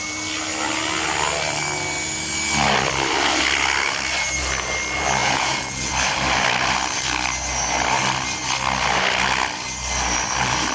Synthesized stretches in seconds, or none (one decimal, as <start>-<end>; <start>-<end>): 5.2-5.9

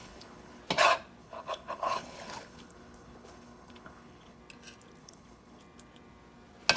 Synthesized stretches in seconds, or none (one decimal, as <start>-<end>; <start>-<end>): 0.0-0.6; 1.2-4.4; 5.0-5.6

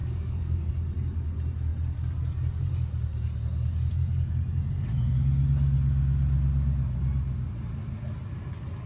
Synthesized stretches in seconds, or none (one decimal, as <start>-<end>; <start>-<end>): 0.0-0.7

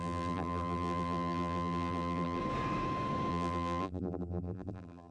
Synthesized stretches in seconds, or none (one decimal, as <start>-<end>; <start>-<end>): 0.0-2.4; 3.3-5.1

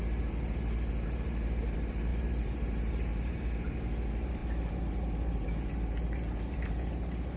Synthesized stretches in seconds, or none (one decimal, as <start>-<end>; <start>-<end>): 0.0-7.4

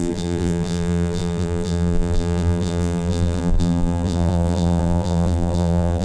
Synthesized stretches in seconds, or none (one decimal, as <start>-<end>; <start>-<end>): 0.0-6.0

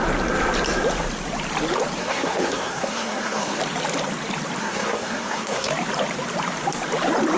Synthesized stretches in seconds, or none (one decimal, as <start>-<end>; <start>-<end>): 2.0-3.6; 4.6-5.7

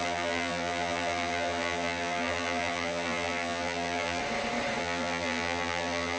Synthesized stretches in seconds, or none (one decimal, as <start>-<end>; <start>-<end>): 0.0-4.2; 4.8-6.2